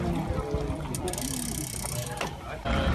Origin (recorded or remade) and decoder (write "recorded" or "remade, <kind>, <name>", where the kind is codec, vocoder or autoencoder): recorded